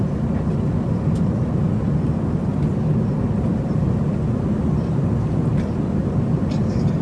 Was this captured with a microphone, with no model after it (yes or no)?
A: yes